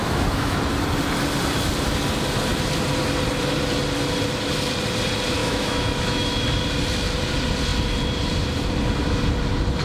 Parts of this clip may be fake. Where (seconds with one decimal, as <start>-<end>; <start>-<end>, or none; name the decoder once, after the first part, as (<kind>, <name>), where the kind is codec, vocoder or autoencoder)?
0.0-0.6 (autoencoder, DAC-VAE); 5.4-6.3

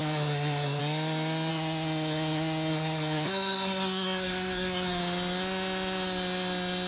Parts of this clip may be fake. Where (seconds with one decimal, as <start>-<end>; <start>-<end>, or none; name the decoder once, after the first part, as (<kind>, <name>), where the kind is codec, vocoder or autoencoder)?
0.0-0.8 (codec, SNAC); 1.5-5.0

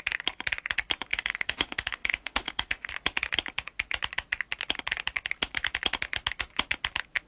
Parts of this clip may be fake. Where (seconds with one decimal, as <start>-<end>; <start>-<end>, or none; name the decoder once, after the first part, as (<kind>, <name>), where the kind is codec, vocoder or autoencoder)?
1.1-2.9 (autoencoder, DAC-VAE)

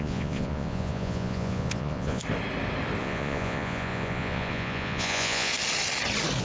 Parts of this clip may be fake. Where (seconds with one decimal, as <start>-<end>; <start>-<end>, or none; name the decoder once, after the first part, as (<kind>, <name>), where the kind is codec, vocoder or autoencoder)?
0.0-2.2 (vocoder, Vocos); 3.0-5.5

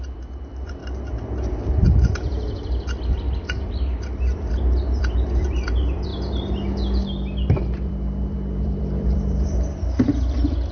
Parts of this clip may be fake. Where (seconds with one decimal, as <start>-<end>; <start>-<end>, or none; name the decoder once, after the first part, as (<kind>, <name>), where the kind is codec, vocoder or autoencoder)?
0.0-0.8 (vocoder, BigVGAN v2); 4.0-6.1; 7.6-10.7

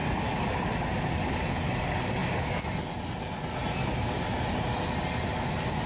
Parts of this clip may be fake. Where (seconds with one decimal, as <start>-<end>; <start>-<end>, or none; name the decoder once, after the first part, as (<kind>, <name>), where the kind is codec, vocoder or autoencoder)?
none